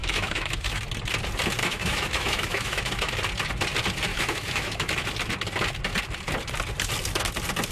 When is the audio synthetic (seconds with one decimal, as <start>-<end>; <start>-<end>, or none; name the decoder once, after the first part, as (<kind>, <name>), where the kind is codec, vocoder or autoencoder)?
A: 0.0-0.8 (autoencoder, DAC-VAE); 1.6-3.1; 4.1-4.9